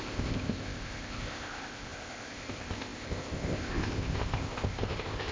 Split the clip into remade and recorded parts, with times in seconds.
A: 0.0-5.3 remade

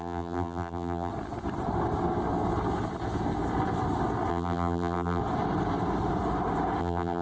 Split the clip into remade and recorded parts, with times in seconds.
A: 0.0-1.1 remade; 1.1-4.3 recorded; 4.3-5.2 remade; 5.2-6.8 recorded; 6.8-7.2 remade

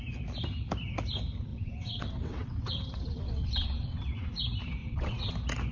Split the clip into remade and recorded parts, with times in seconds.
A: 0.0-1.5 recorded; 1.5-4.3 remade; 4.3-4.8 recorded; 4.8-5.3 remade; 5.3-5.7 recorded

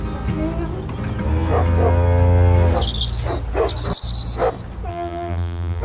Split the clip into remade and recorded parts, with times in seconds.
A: 0.0-4.9 recorded; 4.9-5.8 remade

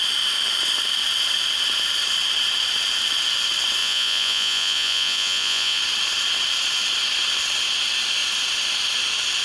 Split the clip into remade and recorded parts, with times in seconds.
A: 0.0-3.8 recorded; 3.8-5.8 remade; 5.8-9.4 recorded

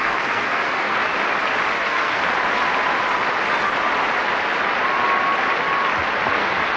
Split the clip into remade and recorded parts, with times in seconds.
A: 0.0-1.0 remade; 1.0-1.8 recorded; 1.8-2.2 remade; 2.2-6.3 recorded; 6.3-6.8 remade